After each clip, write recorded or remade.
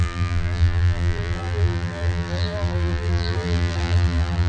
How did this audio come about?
remade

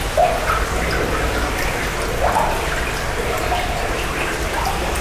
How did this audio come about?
recorded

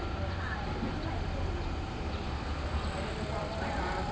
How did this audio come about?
recorded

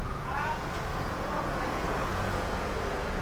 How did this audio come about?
remade